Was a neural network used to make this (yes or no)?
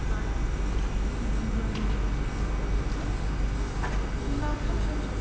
no